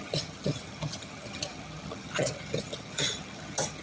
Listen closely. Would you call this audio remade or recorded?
remade